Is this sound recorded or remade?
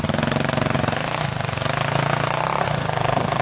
recorded